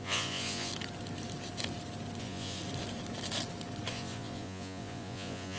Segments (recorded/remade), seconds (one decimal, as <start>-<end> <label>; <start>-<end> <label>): 0.0-0.7 remade; 0.7-2.2 recorded; 2.2-2.6 remade; 2.6-3.9 recorded; 3.9-5.6 remade

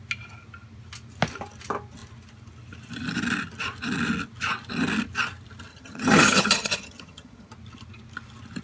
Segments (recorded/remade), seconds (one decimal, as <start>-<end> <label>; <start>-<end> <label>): 0.0-5.7 recorded; 5.7-7.5 remade; 7.5-8.6 recorded